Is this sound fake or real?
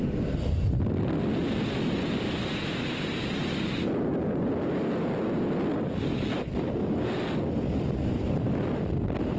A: real